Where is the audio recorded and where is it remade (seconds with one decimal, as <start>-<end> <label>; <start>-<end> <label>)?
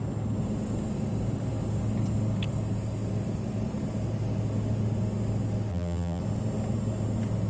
0.0-5.7 recorded; 5.7-6.2 remade; 6.2-7.5 recorded